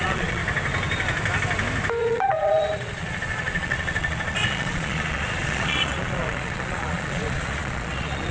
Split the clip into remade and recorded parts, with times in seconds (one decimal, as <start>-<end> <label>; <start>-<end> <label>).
0.0-0.4 remade; 0.4-2.0 recorded; 2.0-8.3 remade